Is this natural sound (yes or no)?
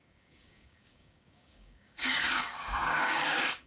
no